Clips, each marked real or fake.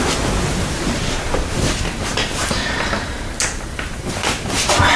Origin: real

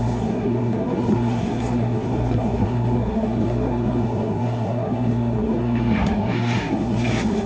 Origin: fake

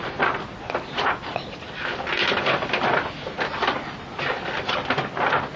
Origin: real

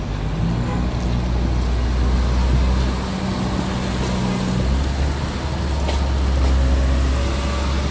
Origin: real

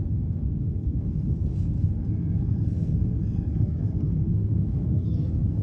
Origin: fake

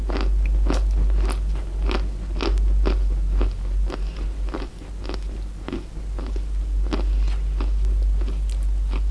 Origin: real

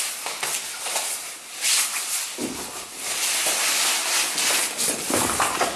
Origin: real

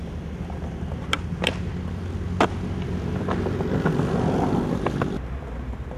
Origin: real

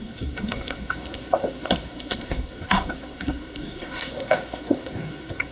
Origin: fake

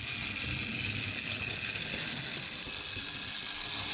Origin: real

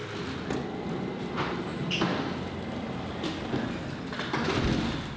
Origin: real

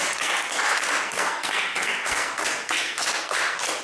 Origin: fake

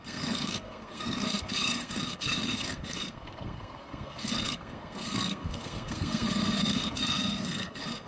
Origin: fake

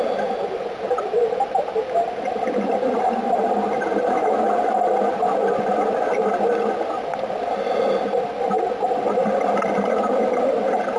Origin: real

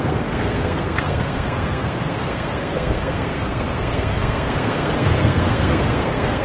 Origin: fake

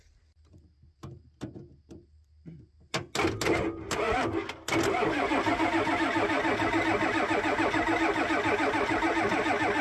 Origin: real